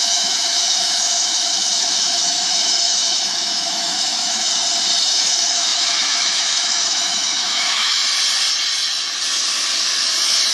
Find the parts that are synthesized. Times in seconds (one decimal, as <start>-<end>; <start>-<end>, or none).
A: 0.0-4.5; 5.0-8.0